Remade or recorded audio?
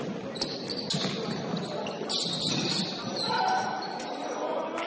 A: recorded